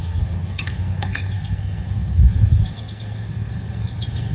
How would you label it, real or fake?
fake